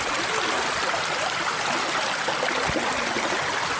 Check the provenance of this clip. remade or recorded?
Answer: recorded